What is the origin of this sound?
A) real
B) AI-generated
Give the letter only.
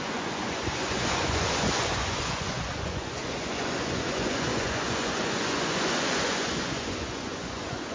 B